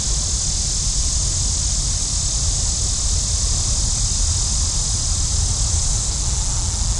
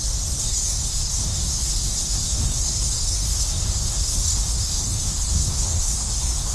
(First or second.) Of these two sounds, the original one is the first